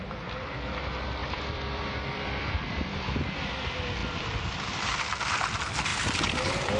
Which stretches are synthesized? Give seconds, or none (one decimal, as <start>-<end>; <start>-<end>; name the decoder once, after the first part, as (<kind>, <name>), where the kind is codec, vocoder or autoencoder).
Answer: 1.2-3.4 (vocoder, BigVGAN v2); 4.0-5.0; 5.9-6.8

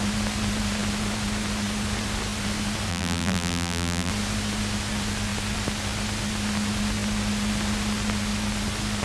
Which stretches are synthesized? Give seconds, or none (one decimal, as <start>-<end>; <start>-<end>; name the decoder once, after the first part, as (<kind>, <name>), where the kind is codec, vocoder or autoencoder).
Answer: 2.9-4.1 (vocoder, BigVGAN v2)